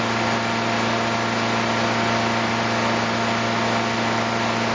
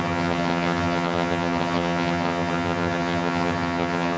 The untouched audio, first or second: first